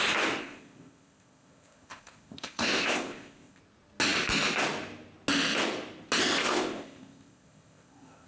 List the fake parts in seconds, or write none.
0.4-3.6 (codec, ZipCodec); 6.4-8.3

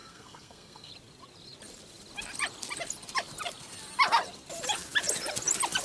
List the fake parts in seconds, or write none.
0.0-0.9 (codec, SNAC)

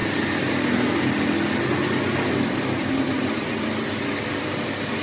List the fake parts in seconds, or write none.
none

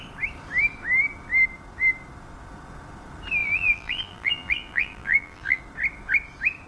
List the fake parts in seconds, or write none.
3.4-5.6 (vocoder, BigVGAN v2)

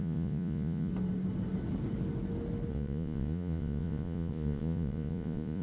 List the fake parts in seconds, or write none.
0.0-0.9 (vocoder, Vocos); 2.7-5.6

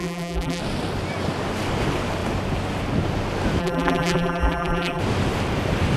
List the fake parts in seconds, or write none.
0.0-0.6 (vocoder, BigVGAN v2); 3.6-5.0